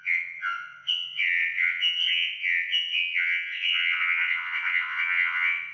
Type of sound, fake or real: fake